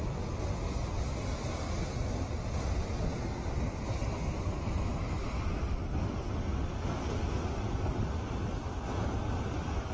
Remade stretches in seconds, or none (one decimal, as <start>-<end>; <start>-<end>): none